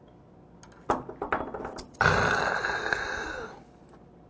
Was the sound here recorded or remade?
recorded